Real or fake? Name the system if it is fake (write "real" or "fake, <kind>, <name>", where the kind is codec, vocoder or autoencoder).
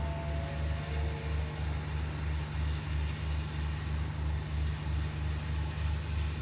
real